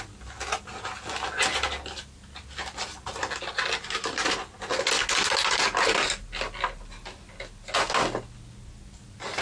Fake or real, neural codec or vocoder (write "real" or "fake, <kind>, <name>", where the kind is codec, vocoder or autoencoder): real